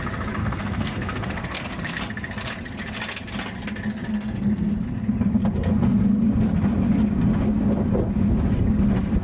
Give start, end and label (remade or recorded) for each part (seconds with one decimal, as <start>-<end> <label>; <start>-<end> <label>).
0.0-0.4 recorded; 0.4-2.0 remade; 2.0-4.1 recorded; 4.1-4.7 remade; 4.7-9.2 recorded